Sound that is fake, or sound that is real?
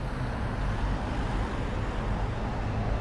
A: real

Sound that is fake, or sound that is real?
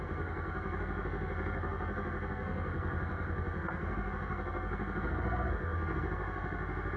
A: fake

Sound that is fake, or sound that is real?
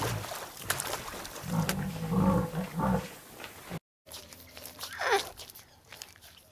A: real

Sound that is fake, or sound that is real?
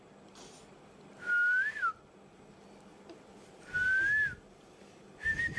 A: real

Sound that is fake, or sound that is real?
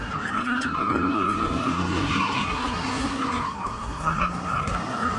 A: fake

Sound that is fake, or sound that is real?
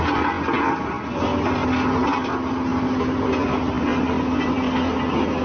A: real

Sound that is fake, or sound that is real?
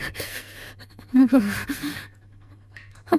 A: fake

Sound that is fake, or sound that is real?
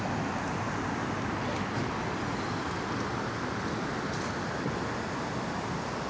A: real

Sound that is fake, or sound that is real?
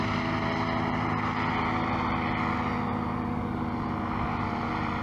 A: real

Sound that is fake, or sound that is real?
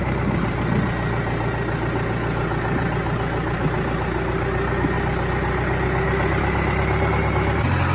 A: real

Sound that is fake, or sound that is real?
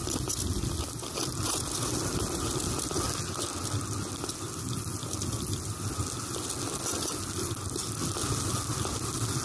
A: real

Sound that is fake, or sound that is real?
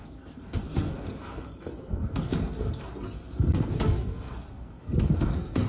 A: fake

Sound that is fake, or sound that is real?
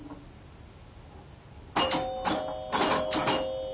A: real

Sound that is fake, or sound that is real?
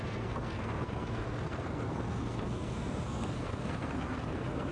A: fake